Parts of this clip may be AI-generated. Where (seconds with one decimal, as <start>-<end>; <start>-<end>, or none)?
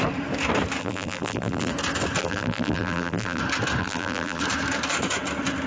0.8-1.7; 2.2-3.4; 3.8-4.4